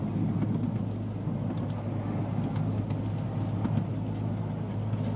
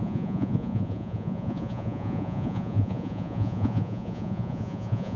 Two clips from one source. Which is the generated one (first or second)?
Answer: second